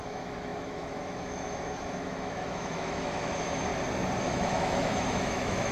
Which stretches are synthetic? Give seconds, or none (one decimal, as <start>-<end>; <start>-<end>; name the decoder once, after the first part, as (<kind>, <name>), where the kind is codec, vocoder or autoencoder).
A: 0.0-3.7 (autoencoder, DAC-VAE); 4.2-5.7